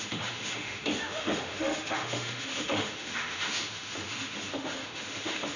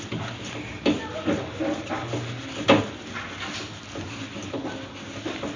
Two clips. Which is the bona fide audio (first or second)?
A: second